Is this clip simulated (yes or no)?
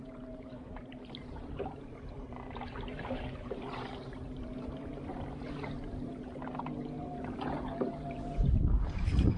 yes